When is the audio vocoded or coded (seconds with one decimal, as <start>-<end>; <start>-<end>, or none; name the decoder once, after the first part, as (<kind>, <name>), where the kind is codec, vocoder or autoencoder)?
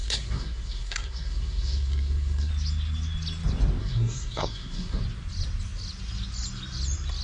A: 0.0-2.5 (codec, SNAC); 3.8-5.0